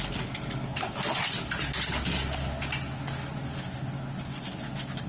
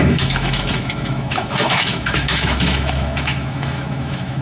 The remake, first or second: second